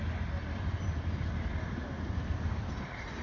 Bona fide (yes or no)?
yes